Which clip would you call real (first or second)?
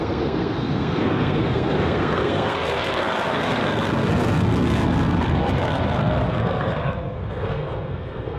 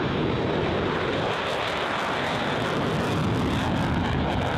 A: second